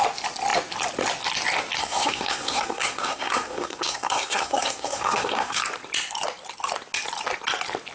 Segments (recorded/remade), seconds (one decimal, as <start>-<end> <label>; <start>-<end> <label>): 0.0-1.8 recorded; 1.8-5.6 remade; 5.6-7.9 recorded